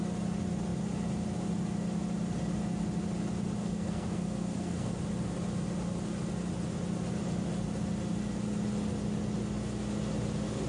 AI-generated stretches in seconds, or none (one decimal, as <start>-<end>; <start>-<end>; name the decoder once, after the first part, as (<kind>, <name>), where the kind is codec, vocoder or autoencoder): 3.6-4.9 (codec, SNAC)